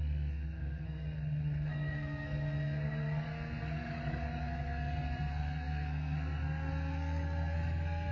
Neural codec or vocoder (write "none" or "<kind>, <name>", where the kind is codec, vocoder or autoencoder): codec, SNAC